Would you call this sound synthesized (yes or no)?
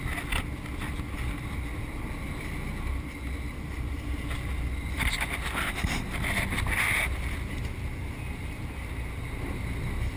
no